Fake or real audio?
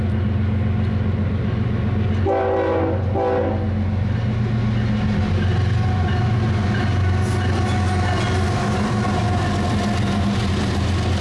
real